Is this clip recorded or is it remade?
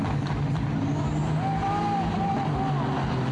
recorded